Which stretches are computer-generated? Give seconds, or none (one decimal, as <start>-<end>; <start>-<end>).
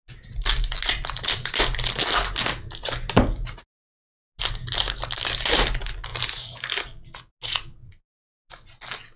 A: none